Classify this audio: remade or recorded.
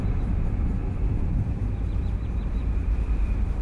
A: remade